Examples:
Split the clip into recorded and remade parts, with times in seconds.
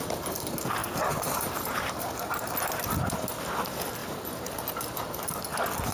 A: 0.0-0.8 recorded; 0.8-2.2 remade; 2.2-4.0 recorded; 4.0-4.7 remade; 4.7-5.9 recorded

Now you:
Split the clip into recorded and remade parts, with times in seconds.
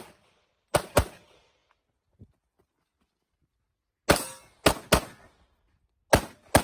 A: 0.0-6.6 recorded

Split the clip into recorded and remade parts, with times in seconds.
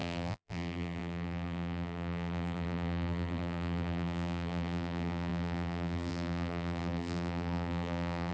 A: 0.0-8.3 remade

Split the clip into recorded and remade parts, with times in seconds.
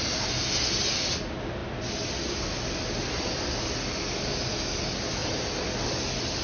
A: 0.0-6.4 recorded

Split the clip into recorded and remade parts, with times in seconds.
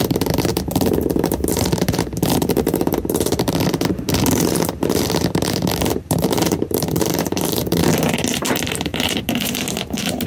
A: 0.0-7.8 remade; 7.8-8.6 recorded; 8.6-10.3 remade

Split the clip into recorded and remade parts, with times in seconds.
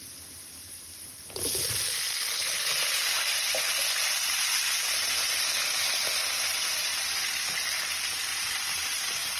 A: 0.0-2.4 recorded; 2.4-3.0 remade; 3.0-6.5 recorded; 6.5-7.0 remade; 7.0-8.3 recorded; 8.3-9.4 remade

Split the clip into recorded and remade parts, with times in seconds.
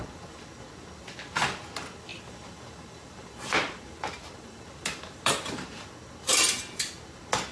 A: 0.0-2.1 recorded; 2.1-5.9 remade; 5.9-7.5 recorded